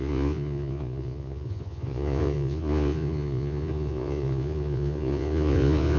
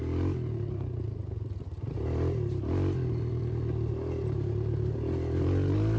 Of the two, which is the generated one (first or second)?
first